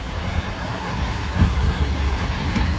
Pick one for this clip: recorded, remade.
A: remade